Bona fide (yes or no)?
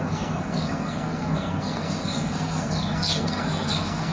no